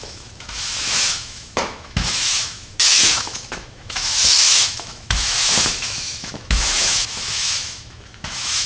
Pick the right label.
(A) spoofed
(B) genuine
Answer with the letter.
A